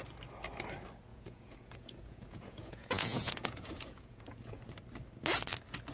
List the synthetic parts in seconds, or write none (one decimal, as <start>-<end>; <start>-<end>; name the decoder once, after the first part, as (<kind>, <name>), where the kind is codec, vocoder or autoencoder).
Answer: 1.1-4.6 (vocoder, Vocos)